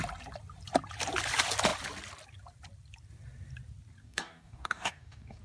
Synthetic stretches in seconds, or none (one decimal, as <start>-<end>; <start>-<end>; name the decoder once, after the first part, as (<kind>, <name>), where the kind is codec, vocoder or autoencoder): 4.0-5.4 (codec, DAC)